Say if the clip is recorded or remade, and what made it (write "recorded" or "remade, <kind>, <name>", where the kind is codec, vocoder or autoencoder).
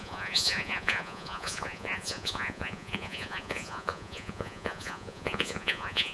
remade, vocoder, Vocos